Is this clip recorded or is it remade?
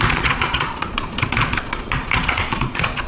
remade